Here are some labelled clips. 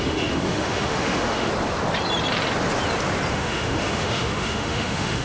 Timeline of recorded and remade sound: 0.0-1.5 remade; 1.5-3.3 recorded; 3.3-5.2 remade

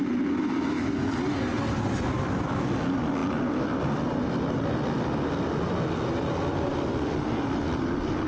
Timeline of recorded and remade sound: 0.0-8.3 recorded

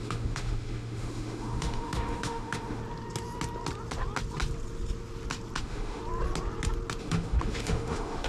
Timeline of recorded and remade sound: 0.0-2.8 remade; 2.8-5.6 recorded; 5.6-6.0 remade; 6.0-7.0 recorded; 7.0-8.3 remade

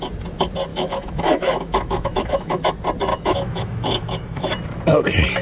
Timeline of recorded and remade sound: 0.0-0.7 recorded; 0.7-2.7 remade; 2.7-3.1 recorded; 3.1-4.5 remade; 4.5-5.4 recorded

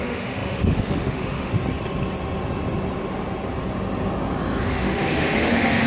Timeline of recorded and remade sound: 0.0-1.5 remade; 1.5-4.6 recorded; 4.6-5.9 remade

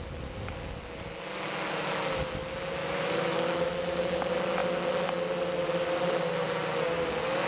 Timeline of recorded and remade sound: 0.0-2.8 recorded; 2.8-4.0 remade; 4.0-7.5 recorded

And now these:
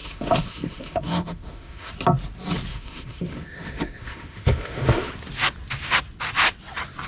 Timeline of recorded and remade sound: 0.0-1.9 remade; 1.9-2.7 recorded; 2.7-5.1 remade; 5.1-7.1 recorded

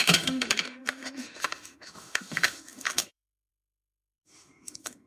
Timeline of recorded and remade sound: 0.0-5.1 remade